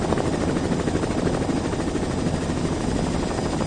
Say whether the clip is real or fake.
real